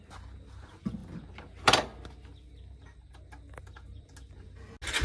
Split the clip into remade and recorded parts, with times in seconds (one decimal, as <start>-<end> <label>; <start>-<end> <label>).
0.0-5.0 recorded